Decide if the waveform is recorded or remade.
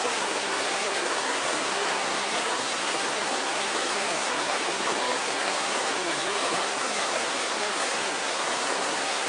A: remade